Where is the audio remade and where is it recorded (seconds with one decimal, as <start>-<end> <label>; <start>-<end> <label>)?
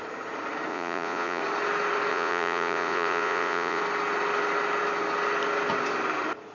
0.0-0.7 recorded; 0.7-1.4 remade; 1.4-2.1 recorded; 2.1-3.8 remade; 3.8-6.5 recorded